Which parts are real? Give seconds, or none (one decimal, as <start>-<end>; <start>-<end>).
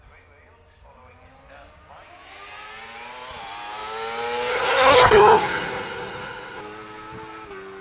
0.0-4.5; 6.6-7.8